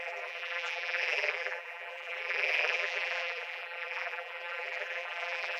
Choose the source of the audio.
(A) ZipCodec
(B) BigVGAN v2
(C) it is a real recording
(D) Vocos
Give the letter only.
B